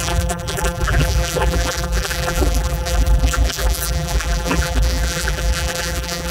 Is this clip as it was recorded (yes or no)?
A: no